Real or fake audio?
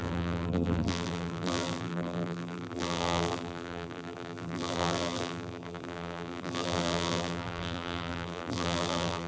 fake